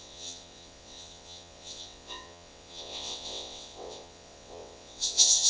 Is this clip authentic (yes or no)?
no